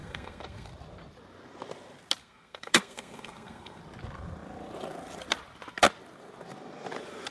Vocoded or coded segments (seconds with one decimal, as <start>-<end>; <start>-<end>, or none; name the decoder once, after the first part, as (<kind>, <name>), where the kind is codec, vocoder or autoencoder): 0.0-0.7 (codec, SNAC); 2.2-3.8